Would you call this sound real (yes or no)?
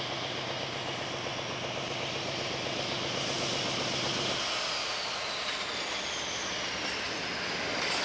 yes